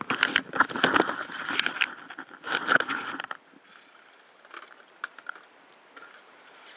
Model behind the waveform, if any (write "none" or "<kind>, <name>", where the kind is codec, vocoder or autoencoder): none